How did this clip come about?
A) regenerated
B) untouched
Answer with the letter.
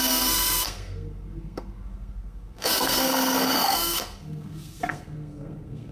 A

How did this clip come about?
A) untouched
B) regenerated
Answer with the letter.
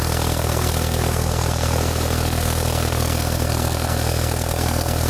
B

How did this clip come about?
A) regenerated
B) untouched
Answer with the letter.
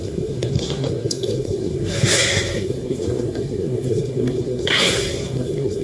A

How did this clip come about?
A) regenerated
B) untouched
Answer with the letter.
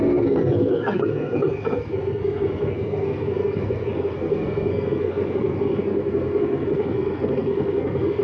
A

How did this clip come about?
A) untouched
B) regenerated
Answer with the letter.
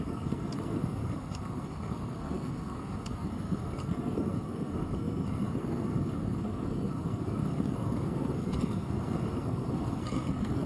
B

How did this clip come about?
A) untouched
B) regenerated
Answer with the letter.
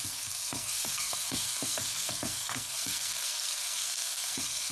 B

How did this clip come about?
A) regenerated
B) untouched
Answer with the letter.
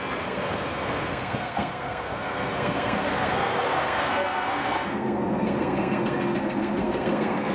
A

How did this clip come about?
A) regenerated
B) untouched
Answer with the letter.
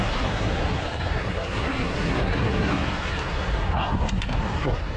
A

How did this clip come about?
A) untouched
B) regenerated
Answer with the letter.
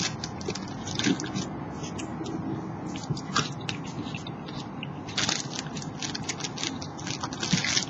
A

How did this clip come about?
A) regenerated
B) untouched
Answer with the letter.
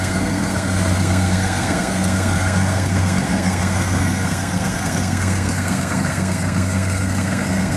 A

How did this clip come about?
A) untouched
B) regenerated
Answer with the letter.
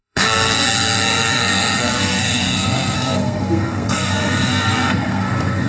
B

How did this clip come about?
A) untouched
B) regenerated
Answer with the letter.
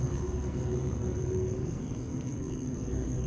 B